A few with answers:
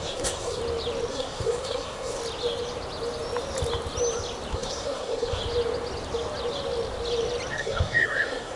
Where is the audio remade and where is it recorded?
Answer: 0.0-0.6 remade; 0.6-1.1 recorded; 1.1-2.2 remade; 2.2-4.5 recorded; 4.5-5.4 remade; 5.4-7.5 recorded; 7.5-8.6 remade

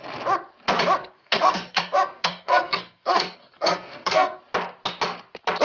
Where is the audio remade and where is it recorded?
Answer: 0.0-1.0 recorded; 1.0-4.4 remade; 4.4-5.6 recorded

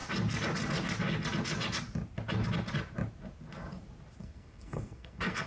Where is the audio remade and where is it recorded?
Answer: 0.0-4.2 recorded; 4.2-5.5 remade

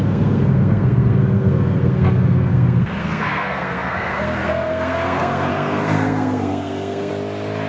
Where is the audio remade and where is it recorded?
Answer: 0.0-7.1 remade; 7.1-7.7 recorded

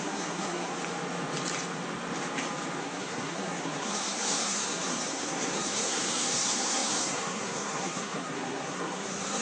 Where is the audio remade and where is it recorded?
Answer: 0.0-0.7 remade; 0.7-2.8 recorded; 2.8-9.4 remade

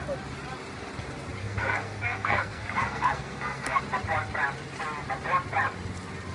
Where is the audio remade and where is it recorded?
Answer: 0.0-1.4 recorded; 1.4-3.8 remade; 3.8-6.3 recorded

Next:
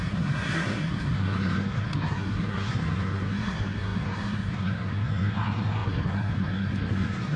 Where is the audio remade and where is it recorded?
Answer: 0.0-7.4 remade

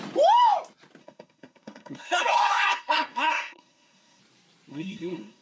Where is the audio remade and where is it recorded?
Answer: 0.0-1.0 recorded; 1.0-4.2 remade; 4.2-4.7 recorded; 4.7-5.4 remade